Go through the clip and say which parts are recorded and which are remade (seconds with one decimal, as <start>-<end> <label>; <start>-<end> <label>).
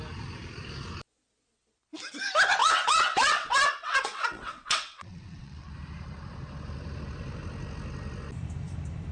0.0-2.6 recorded; 2.6-5.7 remade; 5.7-9.1 recorded